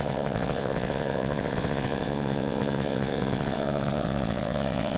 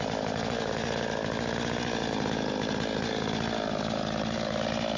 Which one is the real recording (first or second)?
second